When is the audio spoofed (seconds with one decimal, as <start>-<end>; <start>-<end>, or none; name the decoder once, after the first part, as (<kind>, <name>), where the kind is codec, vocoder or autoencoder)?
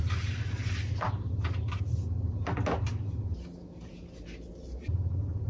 4.5-5.5 (vocoder, BigVGAN v2)